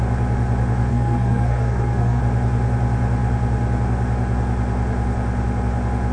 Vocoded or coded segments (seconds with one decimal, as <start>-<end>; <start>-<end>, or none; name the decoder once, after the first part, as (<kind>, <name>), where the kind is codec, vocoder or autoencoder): 0.9-2.2 (codec, SNAC)